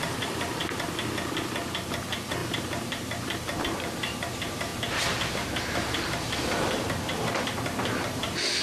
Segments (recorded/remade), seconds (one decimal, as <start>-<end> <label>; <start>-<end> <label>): 0.0-0.6 remade; 0.6-2.0 recorded; 2.0-4.7 remade; 4.7-5.3 recorded; 5.3-8.6 remade